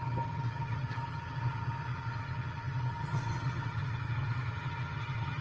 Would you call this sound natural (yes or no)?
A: no